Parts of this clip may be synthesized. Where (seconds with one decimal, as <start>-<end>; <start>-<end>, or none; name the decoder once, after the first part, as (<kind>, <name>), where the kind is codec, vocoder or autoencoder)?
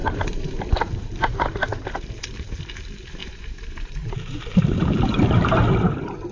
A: 0.0-2.2 (vocoder, BigVGAN v2); 3.2-6.3